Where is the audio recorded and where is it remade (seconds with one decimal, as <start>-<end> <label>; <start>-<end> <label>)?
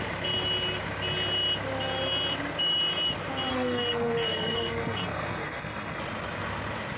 0.0-3.5 recorded; 3.5-6.0 remade; 6.0-7.0 recorded